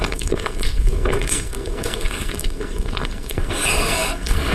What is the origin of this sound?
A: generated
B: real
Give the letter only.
A